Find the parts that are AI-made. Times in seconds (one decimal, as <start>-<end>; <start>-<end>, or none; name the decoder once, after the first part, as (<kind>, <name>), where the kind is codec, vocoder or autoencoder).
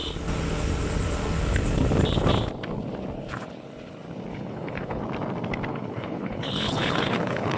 4.3-5.0 (codec, HILCodec); 5.7-7.6